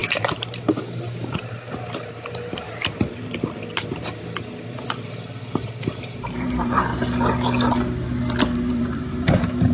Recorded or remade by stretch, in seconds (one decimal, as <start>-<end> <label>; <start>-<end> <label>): 0.0-3.6 remade; 3.6-5.1 recorded; 5.1-6.9 remade; 6.9-8.7 recorded; 8.7-9.7 remade

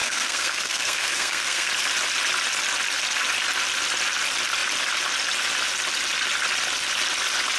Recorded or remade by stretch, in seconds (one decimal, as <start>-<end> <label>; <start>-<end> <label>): 0.0-1.7 remade; 1.7-7.6 recorded